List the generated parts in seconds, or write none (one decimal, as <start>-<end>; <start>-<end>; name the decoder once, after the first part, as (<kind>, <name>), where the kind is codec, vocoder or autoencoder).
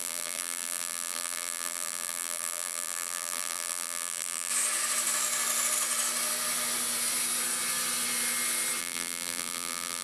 0.0-4.5 (vocoder, BigVGAN v2); 8.8-10.0